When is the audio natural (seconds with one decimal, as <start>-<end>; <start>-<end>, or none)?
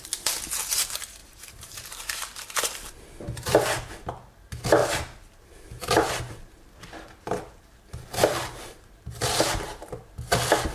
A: 0.0-1.2; 2.9-4.8; 6.2-8.4; 10.0-10.7